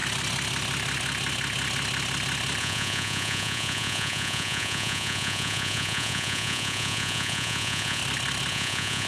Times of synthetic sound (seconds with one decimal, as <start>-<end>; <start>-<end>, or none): 2.6-8.0; 8.5-9.1